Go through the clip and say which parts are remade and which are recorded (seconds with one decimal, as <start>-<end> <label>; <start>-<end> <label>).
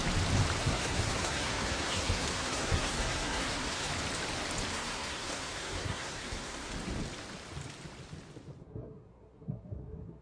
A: 0.0-0.6 recorded; 0.6-3.9 remade; 3.9-4.7 recorded; 4.7-6.7 remade; 6.7-8.6 recorded; 8.6-10.2 remade